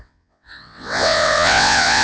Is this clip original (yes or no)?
no